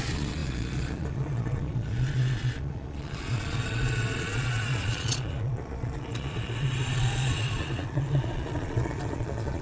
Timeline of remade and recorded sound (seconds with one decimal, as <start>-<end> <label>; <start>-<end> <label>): 0.0-9.6 remade